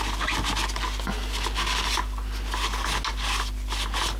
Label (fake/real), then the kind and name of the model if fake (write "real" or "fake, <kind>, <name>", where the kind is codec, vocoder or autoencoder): real